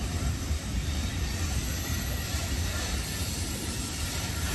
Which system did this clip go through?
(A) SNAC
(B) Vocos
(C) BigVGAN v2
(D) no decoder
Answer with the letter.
C